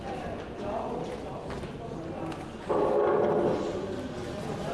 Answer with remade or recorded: recorded